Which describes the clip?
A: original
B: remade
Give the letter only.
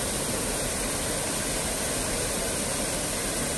A